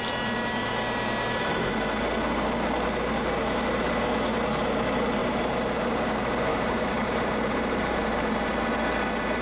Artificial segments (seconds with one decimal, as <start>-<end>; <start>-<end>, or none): 5.2-5.8; 6.5-8.5